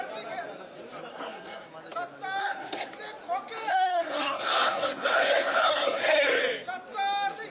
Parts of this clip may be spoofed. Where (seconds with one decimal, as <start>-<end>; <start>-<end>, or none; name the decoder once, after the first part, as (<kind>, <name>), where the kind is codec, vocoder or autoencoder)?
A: 1.1-1.7 (codec, SNAC); 2.4-2.9; 3.7-6.4